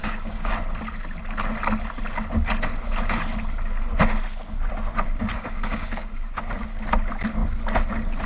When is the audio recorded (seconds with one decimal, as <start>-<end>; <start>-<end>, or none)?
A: 0.5-5.3; 6.4-8.3